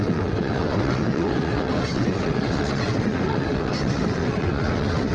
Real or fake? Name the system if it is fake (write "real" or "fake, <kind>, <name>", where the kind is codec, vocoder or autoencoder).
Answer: fake, vocoder, WaveNeXt